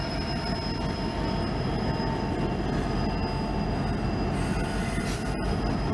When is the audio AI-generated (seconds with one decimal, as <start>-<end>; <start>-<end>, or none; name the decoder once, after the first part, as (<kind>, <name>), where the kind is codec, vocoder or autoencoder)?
none